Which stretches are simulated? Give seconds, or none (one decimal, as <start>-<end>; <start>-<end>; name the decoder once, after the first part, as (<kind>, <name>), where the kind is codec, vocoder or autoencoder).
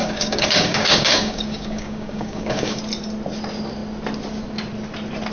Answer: 0.0-2.8 (codec, DAC)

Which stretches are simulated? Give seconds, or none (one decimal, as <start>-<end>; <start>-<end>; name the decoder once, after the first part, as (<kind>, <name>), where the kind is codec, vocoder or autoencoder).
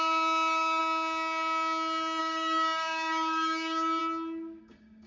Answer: 0.0-0.8 (codec, DAC); 2.2-4.0; 4.6-5.1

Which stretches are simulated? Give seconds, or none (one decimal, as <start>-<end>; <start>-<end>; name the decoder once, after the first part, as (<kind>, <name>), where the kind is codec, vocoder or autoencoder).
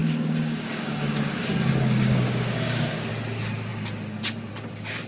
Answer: 0.0-3.1 (codec, DAC)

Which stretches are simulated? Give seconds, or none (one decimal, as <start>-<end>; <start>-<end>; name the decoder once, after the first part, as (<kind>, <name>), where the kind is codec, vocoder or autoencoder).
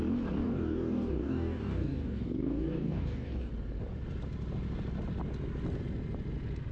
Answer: 0.4-3.5 (codec, DAC)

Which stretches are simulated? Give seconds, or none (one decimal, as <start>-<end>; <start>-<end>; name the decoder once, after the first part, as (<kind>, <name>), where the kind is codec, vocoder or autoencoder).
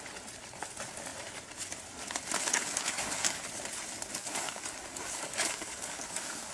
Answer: 2.4-3.4 (codec, DAC); 4.2-6.5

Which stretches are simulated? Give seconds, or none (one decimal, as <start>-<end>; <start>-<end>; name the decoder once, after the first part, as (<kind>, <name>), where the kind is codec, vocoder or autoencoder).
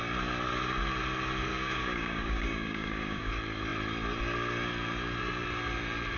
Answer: 1.5-3.3 (codec, DAC)